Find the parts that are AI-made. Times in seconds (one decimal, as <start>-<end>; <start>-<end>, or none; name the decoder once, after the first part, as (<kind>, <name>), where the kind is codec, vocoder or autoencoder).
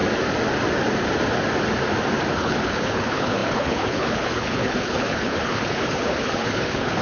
2.3-7.0 (codec, HILCodec)